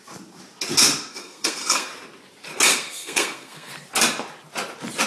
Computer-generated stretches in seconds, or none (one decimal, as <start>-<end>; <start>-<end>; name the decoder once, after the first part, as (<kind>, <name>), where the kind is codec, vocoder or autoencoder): 1.1-1.9 (codec, SNAC); 2.7-3.7